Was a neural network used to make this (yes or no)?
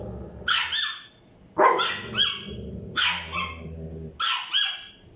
no